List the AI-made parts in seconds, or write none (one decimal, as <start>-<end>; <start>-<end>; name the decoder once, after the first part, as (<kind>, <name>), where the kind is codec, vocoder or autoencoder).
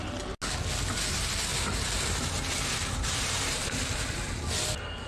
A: 1.5-3.7 (vocoder, BigVGAN v2)